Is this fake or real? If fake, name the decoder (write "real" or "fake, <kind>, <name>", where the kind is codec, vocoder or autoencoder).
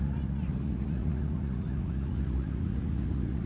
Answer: fake, vocoder, Vocos